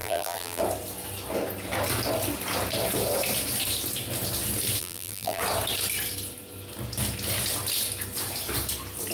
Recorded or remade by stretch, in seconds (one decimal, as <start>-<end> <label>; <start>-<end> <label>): 0.0-0.6 remade; 0.6-4.8 recorded; 4.8-5.4 remade; 5.4-9.1 recorded